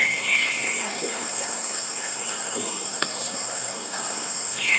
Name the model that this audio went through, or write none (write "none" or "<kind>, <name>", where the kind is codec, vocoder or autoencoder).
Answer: codec, SNAC